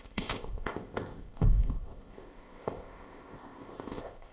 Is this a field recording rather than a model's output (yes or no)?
no